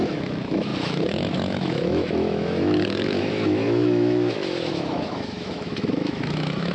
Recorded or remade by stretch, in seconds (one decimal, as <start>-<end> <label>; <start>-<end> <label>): 0.0-6.7 remade